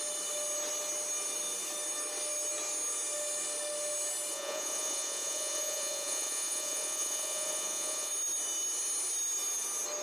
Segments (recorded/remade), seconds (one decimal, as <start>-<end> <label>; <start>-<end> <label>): 0.0-4.3 recorded; 4.3-8.1 remade; 8.1-10.0 recorded